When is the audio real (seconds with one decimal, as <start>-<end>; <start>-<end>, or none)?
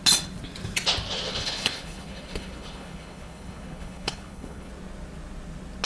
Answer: 0.0-1.3; 4.7-5.9